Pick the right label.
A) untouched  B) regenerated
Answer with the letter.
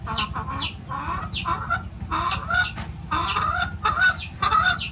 A